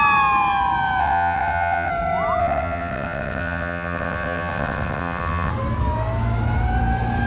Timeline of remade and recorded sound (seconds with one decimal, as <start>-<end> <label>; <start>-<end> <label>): 0.0-1.0 recorded; 1.0-1.9 remade; 1.9-2.4 recorded; 2.4-5.5 remade; 5.5-7.3 recorded